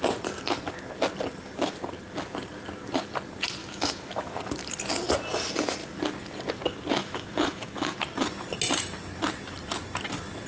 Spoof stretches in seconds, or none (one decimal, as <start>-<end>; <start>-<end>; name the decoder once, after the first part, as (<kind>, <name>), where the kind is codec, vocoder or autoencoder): 3.6-4.4 (autoencoder, DAC-VAE); 7.0-8.0